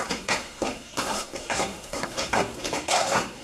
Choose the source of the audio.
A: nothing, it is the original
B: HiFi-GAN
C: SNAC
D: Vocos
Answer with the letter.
C